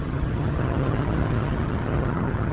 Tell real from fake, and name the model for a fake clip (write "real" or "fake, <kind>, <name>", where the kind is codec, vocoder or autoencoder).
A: fake, vocoder, HiFi-GAN